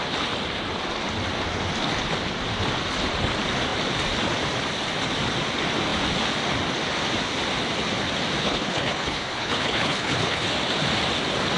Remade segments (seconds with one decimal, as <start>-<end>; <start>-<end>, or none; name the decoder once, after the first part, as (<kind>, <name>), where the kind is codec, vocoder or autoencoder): 8.4-10.5 (codec, HILCodec)